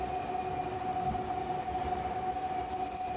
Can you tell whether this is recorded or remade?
recorded